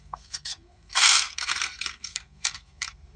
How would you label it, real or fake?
fake